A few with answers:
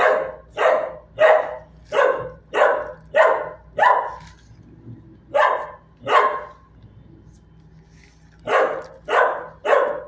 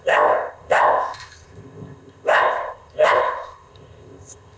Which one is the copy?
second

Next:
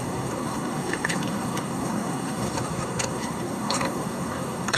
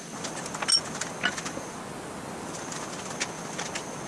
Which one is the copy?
first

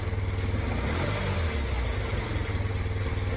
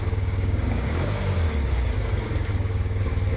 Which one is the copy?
second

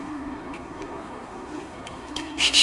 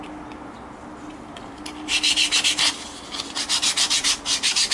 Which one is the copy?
first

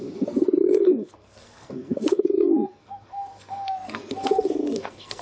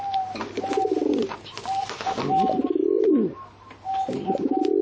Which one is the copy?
first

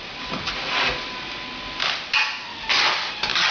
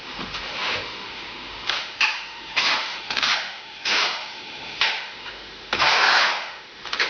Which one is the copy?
second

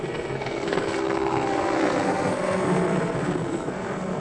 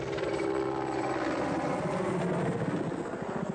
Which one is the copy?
first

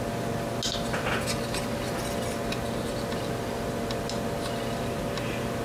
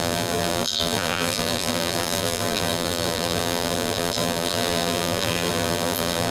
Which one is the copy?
second